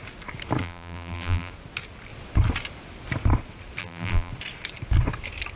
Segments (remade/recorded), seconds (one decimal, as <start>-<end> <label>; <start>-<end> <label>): 0.0-0.6 recorded; 0.6-1.5 remade; 1.5-3.8 recorded; 3.8-4.3 remade; 4.3-5.6 recorded